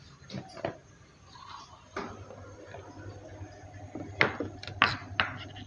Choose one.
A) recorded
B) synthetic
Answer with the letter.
A